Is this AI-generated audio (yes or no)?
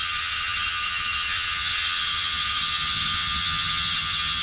yes